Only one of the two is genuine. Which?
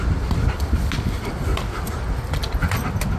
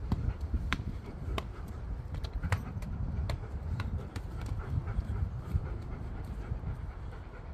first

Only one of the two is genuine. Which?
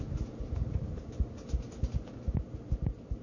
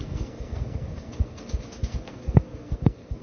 first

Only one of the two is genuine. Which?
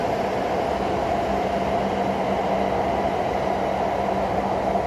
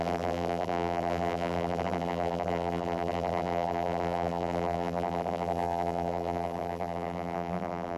first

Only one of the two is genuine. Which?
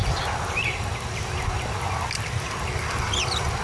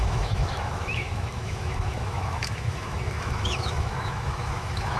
first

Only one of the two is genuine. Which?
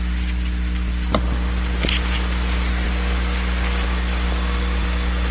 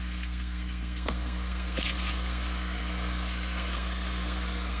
first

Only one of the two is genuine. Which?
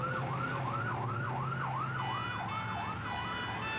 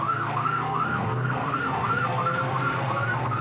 first